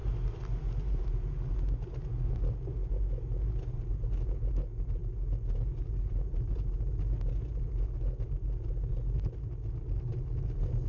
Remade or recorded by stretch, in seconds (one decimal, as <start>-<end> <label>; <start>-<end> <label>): 0.0-10.9 recorded